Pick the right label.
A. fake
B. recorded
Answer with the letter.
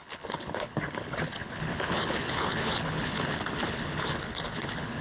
A